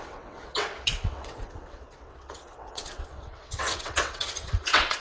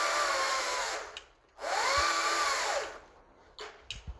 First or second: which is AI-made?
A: first